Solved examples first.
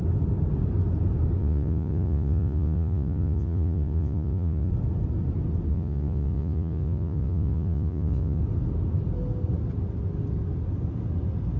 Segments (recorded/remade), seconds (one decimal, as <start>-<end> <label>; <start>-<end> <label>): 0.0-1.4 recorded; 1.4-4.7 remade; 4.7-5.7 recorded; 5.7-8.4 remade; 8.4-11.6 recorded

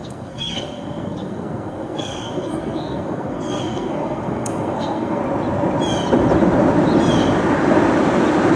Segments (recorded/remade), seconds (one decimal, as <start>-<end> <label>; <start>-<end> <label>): 0.0-5.2 remade; 5.2-8.6 recorded

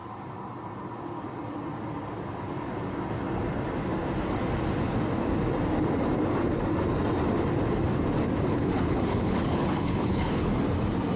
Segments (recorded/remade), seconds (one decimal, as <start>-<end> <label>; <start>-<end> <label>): 0.0-8.5 recorded; 8.5-10.5 remade; 10.5-11.2 recorded

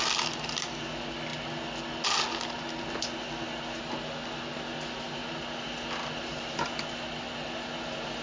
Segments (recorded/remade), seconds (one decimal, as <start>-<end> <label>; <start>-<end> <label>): 0.0-8.2 recorded

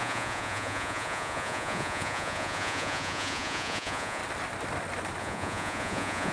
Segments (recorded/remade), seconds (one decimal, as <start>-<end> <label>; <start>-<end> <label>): 0.0-4.2 remade; 4.2-5.2 recorded; 5.2-6.3 remade

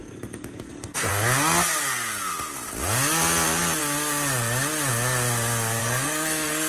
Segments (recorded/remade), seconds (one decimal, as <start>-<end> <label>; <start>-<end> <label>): 0.0-1.1 remade; 1.1-5.8 recorded; 5.8-6.7 remade

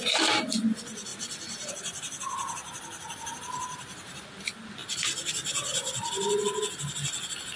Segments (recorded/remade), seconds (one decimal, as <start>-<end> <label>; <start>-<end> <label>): 0.0-1.1 recorded; 1.1-1.7 remade; 1.7-7.6 recorded